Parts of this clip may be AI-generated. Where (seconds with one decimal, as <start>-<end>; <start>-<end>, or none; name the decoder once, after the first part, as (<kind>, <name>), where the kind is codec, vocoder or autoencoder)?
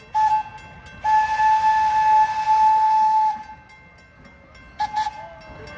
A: none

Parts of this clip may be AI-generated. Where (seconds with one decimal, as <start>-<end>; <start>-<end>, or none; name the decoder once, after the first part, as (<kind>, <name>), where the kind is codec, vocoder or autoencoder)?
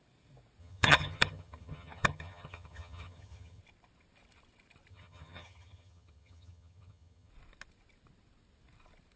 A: 0.6-3.6 (vocoder, HiFi-GAN); 4.9-7.3